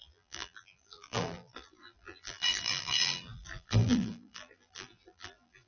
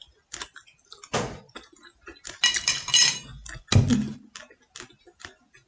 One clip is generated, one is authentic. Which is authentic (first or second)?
second